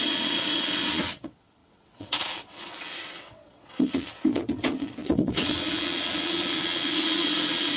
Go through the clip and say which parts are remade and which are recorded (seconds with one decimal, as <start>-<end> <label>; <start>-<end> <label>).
0.0-7.8 remade